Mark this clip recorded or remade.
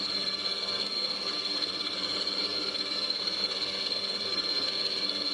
remade